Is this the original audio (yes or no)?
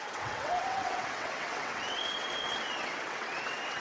no